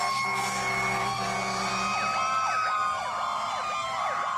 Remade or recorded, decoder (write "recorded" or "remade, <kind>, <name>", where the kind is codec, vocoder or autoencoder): recorded